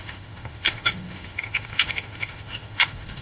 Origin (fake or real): fake